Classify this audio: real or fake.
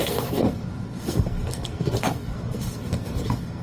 fake